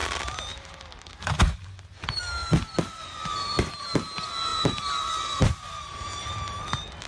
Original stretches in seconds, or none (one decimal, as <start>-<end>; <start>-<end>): 1.1-2.4; 3.8-4.5